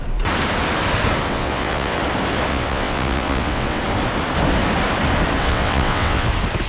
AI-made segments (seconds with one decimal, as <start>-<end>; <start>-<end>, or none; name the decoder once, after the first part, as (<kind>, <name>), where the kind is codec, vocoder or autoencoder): 1.3-2.0 (vocoder, WaveNeXt); 2.5-3.8; 5.4-6.3